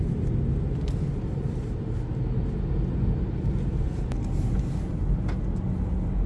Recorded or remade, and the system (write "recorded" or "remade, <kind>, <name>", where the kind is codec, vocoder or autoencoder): recorded